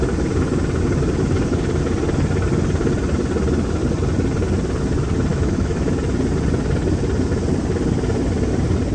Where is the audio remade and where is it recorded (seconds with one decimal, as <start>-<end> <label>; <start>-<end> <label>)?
0.0-5.3 recorded; 5.3-5.9 remade; 5.9-8.9 recorded